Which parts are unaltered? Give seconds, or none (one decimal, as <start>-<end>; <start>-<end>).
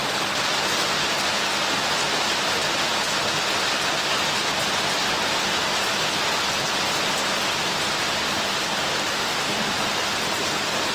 0.0-9.1; 9.7-10.9